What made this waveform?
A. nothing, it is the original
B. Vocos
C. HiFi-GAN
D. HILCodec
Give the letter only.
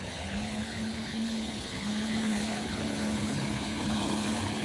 D